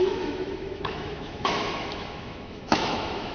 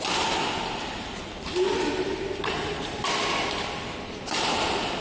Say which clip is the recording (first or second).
second